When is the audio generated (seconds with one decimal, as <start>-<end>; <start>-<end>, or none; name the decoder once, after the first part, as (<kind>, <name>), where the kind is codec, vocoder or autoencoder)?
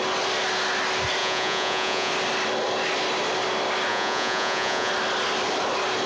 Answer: 1.2-2.1 (vocoder, Vocos); 3.9-4.9